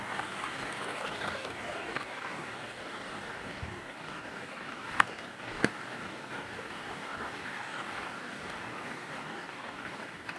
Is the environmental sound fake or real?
fake